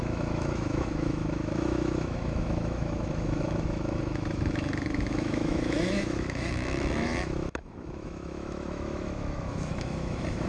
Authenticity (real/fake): fake